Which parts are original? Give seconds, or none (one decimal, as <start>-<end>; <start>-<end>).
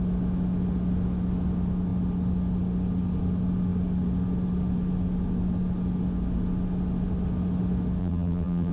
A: 0.0-8.0